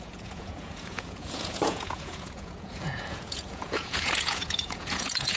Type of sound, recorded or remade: remade